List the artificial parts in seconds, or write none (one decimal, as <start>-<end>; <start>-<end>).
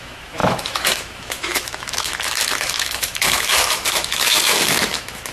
0.0-5.3